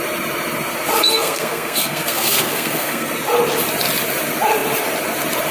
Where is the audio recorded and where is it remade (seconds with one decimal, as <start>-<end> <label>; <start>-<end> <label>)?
0.0-1.0 recorded; 1.0-3.1 remade; 3.1-5.5 recorded